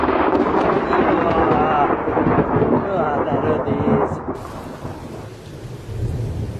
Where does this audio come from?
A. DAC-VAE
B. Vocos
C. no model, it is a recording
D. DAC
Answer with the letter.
C